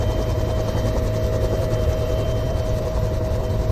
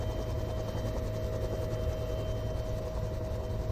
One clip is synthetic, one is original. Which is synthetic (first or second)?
first